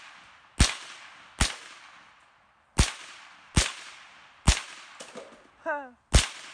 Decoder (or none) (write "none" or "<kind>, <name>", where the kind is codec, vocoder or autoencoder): none